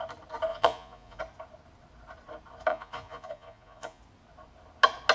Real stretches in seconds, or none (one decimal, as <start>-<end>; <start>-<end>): 0.0-0.5; 1.2-2.7; 4.0-5.1